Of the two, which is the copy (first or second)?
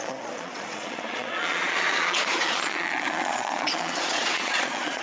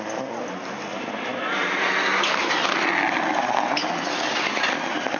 first